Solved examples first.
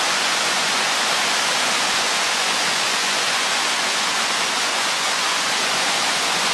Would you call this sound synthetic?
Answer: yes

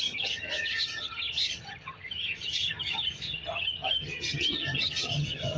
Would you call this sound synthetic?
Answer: yes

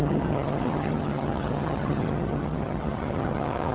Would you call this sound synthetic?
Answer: yes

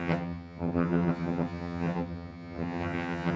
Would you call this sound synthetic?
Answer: yes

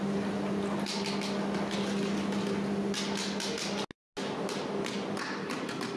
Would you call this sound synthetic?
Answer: no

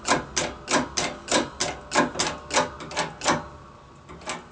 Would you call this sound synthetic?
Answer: no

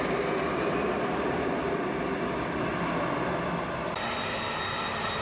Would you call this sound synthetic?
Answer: no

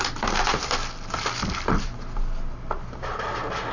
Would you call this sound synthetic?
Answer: no